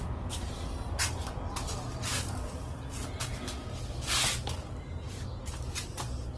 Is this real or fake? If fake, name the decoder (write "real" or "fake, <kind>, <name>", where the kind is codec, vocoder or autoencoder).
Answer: real